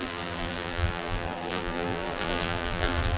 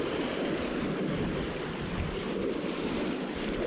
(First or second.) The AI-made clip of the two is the first